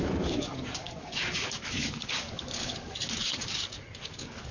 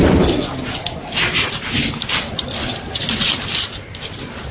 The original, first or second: second